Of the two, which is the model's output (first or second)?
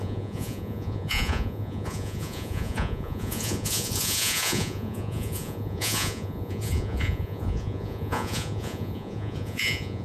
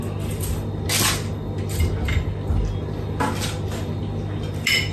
first